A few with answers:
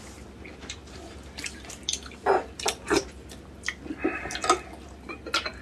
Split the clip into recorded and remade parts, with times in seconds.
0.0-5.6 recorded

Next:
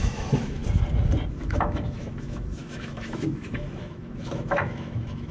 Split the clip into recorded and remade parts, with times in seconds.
0.0-0.6 remade; 0.6-1.3 recorded; 1.3-5.3 remade

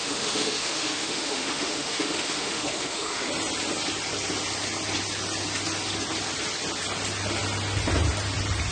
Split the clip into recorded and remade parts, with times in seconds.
0.0-3.3 remade; 3.3-8.7 recorded

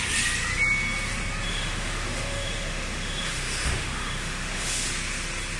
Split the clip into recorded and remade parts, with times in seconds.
0.0-1.5 recorded; 1.5-4.9 remade; 4.9-5.6 recorded

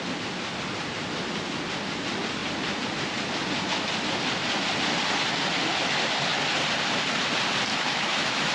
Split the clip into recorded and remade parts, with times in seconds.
0.0-7.7 recorded; 7.7-8.5 remade